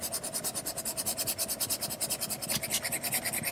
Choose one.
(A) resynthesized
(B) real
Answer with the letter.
B